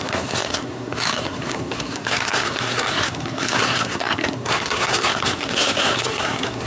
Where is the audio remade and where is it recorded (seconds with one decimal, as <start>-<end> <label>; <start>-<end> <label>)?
0.0-6.7 remade